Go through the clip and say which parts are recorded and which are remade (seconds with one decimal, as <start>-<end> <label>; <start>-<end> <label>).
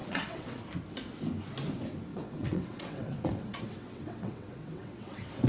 0.0-0.6 remade; 0.6-2.1 recorded; 2.1-5.5 remade